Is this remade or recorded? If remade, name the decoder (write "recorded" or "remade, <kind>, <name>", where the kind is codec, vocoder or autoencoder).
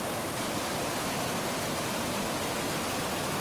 remade, vocoder, BigVGAN v2